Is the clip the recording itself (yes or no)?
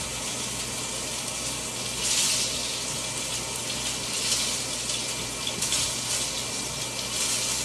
yes